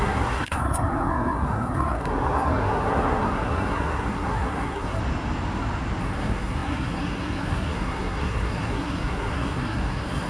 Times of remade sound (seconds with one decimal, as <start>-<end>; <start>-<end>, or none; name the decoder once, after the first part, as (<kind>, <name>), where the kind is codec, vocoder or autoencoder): 0.0-5.0 (codec, SNAC); 6.0-10.3